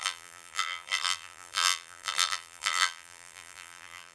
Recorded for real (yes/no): no